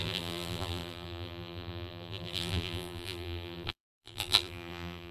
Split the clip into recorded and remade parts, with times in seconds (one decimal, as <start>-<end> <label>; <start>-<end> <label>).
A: 0.0-5.1 remade